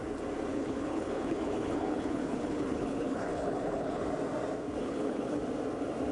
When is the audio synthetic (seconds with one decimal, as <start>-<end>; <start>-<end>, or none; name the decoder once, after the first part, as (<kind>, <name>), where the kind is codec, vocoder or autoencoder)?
0.5-4.0 (codec, HILCodec); 4.8-5.4